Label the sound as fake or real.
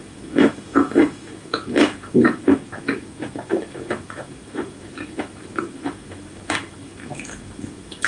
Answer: fake